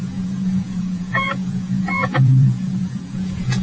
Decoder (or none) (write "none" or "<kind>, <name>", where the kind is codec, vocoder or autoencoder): vocoder, Vocos